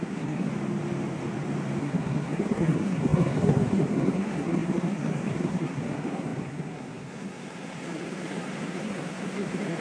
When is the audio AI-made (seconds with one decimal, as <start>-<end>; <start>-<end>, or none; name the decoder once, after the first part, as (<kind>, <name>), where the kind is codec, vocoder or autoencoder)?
0.0-0.5 (codec, SNAC); 1.8-9.8